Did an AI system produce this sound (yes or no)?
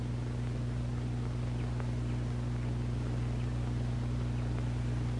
no